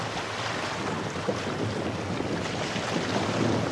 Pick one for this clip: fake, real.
real